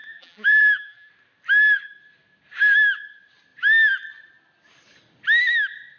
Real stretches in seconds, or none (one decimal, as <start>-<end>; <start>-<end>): 1.1-6.0